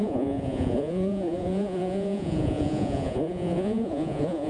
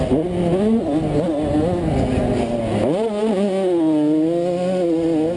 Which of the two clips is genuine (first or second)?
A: second